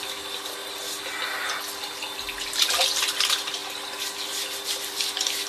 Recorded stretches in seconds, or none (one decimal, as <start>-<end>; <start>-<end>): 0.0-0.6; 1.1-3.6; 4.4-5.5